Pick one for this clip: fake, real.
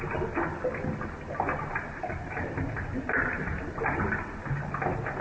real